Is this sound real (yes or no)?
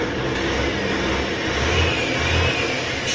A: yes